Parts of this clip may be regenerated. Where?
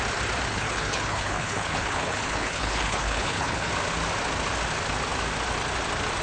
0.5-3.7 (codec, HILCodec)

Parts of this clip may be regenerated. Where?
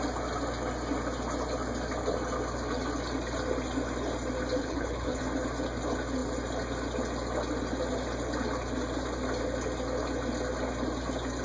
4.6-5.2 (codec, HILCodec)